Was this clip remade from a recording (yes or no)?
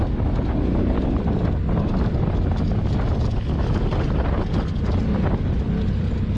no